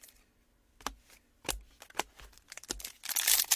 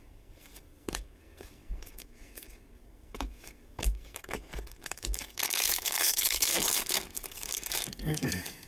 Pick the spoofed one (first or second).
second